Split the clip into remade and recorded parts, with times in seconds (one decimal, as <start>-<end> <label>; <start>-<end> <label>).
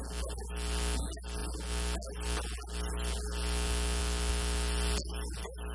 0.0-5.7 recorded